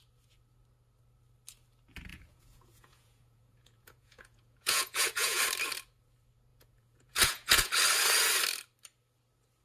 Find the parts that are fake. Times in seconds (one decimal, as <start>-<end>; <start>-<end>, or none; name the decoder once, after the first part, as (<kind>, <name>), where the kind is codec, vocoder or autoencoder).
2.1-5.4 (vocoder, Vocos); 6.5-7.7